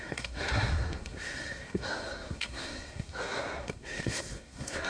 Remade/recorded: remade